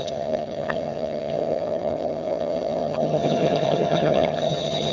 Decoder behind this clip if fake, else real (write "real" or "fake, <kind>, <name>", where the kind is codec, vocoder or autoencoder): fake, vocoder, HiFi-GAN